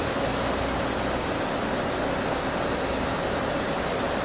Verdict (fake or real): real